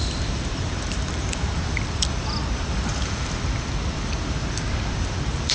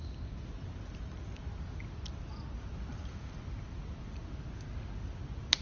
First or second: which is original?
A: second